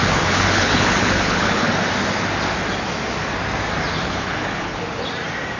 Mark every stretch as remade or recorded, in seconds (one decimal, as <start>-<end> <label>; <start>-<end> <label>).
0.0-1.7 remade; 1.7-3.9 recorded; 3.9-4.8 remade; 4.8-5.6 recorded